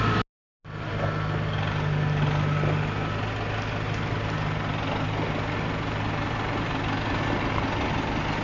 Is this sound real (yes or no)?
yes